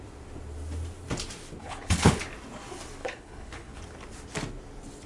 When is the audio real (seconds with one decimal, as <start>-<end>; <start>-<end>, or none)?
0.0-1.6; 2.2-3.0; 3.8-5.1